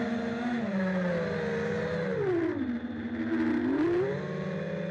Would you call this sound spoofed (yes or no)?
no